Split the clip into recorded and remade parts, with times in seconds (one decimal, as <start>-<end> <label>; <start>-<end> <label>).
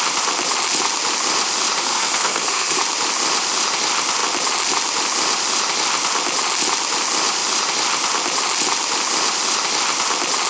0.0-1.8 recorded; 1.8-2.8 remade; 2.8-10.5 recorded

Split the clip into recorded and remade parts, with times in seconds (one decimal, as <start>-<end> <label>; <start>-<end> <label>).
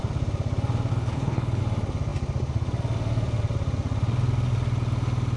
0.0-0.9 recorded; 0.9-1.6 remade; 1.6-5.4 recorded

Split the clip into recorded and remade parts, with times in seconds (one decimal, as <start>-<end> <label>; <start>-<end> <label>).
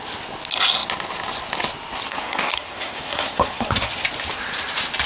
0.0-2.1 recorded; 2.1-3.9 remade; 3.9-5.1 recorded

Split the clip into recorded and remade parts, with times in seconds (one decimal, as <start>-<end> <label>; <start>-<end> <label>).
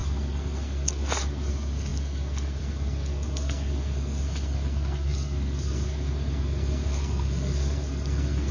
0.0-8.5 remade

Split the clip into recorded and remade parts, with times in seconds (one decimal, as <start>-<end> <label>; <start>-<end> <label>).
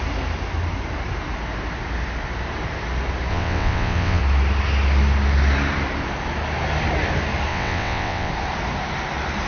0.0-3.3 recorded; 3.3-4.2 remade; 4.2-7.5 recorded; 7.5-8.3 remade; 8.3-9.5 recorded